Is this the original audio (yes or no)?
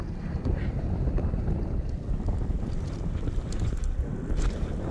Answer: no